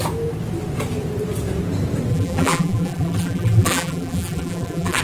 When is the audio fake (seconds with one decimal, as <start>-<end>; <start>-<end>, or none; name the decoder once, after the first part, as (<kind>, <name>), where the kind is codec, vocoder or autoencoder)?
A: 2.1-5.0 (vocoder, BigVGAN v2)